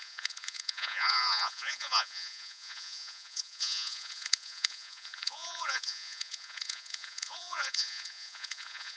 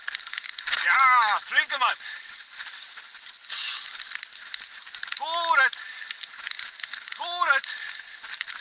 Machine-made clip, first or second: first